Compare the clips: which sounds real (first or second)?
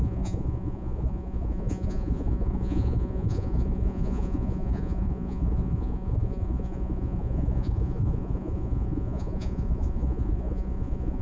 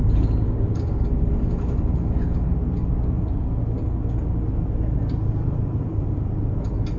second